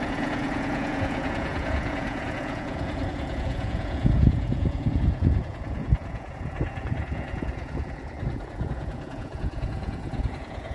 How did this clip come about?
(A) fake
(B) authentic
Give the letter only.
A